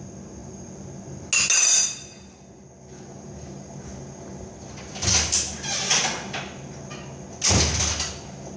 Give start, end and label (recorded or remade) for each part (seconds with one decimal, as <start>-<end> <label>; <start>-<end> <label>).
0.0-8.6 recorded